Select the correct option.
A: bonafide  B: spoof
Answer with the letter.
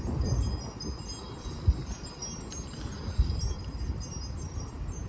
A